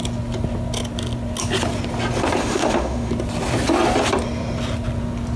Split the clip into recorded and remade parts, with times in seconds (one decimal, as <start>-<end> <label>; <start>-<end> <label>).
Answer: 0.0-2.4 recorded; 2.4-3.1 remade; 3.1-5.4 recorded